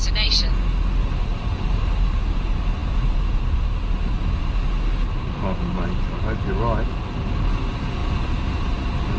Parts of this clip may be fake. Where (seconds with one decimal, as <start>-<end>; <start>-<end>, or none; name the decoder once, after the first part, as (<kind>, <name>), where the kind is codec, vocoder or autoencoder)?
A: 1.0-2.2 (vocoder, BigVGAN v2)